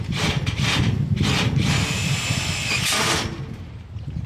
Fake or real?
real